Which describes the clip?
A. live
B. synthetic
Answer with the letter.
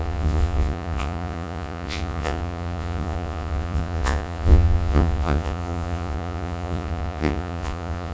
B